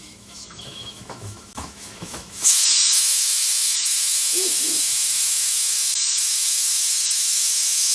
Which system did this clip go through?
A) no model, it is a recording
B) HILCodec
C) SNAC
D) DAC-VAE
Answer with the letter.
D